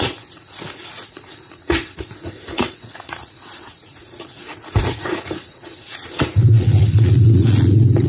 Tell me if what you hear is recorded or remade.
remade